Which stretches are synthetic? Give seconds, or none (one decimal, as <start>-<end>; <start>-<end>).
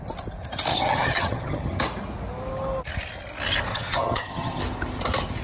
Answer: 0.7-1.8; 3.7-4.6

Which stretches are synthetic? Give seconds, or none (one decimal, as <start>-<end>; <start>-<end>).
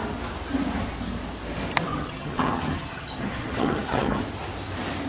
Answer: 1.9-4.2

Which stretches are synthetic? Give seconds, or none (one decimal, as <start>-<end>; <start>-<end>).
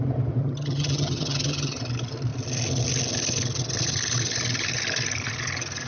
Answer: 0.4-1.8